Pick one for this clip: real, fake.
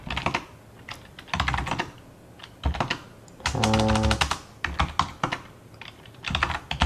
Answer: real